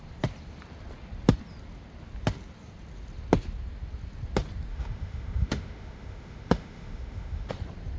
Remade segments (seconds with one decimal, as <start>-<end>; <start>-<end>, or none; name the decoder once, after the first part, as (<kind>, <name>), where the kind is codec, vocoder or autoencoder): 4.7-7.5 (autoencoder, DAC-VAE)

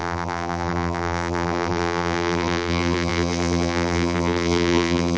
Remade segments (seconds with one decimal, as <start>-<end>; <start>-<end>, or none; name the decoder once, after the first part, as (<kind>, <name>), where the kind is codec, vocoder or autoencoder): 0.0-5.2 (vocoder, BigVGAN v2)

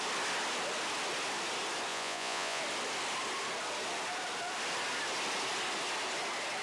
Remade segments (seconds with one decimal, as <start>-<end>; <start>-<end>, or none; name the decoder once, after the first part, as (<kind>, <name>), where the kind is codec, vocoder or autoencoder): 1.9-2.6 (vocoder, Vocos)

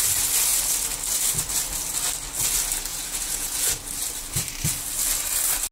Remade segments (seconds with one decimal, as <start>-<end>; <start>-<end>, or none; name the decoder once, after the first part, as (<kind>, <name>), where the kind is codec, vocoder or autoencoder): 2.9-3.7 (vocoder, Vocos)

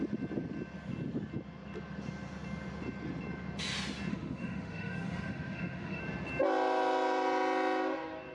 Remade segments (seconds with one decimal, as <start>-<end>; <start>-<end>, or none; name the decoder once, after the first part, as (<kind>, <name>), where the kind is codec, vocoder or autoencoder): 4.1-6.0 (autoencoder, DAC-VAE)

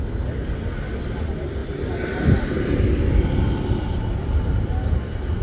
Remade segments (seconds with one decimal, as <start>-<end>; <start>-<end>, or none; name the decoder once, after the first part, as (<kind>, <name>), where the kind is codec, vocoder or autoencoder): none